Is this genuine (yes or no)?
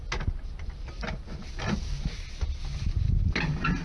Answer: yes